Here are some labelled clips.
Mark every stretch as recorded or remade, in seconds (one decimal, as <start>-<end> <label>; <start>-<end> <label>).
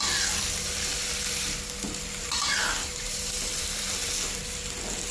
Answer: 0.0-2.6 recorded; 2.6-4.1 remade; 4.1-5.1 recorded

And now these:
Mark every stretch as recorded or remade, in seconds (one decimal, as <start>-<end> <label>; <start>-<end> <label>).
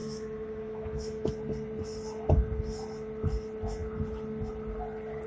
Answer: 0.0-1.3 remade; 1.3-5.3 recorded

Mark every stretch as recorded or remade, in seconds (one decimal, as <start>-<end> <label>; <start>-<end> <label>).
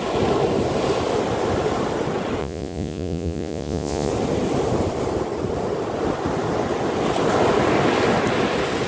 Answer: 0.0-2.4 recorded; 2.4-4.1 remade; 4.1-8.9 recorded